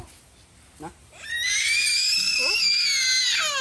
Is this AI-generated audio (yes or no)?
no